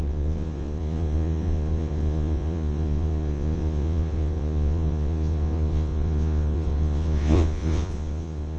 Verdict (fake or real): fake